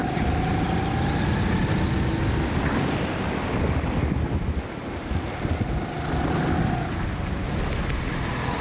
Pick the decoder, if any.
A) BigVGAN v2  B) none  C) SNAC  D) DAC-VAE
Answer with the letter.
B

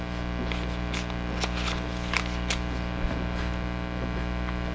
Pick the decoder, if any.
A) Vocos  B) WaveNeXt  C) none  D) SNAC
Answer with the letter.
C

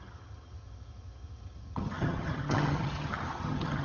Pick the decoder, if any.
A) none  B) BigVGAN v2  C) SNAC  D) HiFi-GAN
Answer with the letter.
D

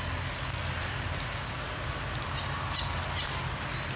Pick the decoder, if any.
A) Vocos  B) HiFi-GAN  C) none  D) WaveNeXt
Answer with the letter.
C